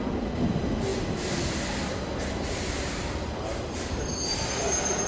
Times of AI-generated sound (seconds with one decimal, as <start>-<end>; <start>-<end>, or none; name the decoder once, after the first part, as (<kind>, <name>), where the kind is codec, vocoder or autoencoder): none